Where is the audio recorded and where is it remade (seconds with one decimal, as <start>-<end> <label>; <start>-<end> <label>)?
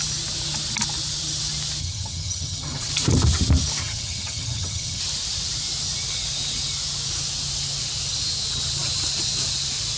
0.0-1.8 recorded; 1.8-2.9 remade; 2.9-3.8 recorded; 3.8-5.0 remade; 5.0-10.0 recorded